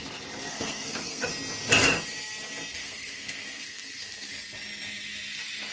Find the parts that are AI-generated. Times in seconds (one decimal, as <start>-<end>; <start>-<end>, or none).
0.5-1.3; 2.8-4.3